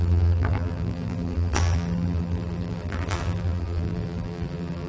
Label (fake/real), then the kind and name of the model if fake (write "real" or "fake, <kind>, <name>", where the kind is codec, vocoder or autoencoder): fake, vocoder, BigVGAN v2